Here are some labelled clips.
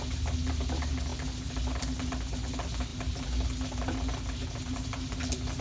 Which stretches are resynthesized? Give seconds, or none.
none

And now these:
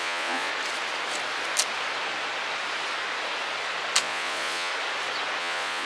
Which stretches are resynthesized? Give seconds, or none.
0.0-0.5; 4.0-4.7; 5.4-5.9